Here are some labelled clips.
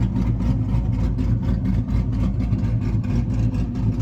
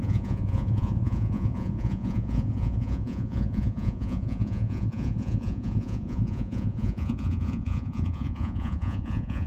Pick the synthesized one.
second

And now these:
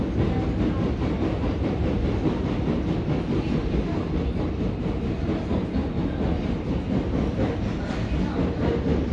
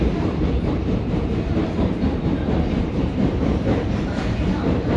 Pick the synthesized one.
second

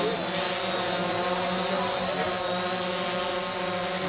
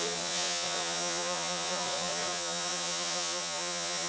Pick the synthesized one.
second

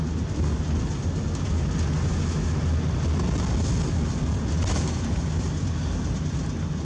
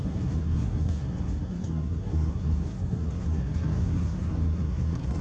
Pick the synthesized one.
second